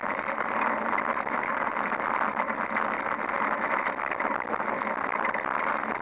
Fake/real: real